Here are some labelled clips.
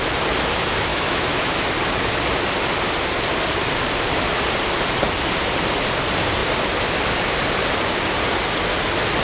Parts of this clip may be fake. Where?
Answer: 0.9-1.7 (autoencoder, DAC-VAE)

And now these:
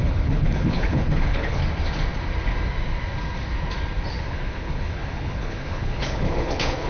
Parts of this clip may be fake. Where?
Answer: 0.0-1.6 (codec, HILCodec); 4.1-6.9

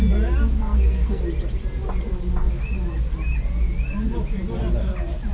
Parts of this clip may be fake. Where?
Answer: 0.6-1.2 (codec, SNAC)

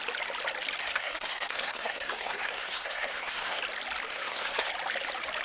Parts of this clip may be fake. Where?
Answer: 0.8-3.6 (codec, SNAC); 4.1-4.7

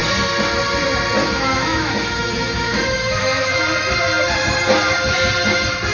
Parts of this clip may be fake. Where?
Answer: 1.2-3.6 (autoencoder, DAC-VAE)

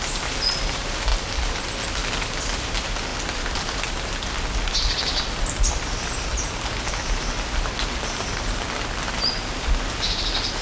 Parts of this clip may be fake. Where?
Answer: none

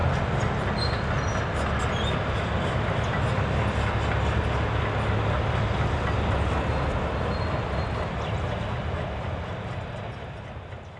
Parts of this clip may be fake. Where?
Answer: none

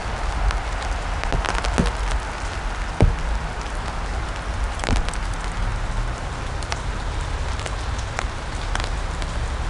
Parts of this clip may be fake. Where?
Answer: 5.7-8.6 (vocoder, BigVGAN v2)